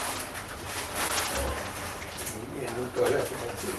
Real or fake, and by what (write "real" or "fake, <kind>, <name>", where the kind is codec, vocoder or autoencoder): real